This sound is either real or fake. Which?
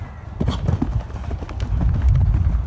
real